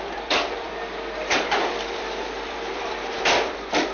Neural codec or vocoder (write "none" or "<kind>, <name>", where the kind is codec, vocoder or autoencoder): vocoder, BigVGAN v2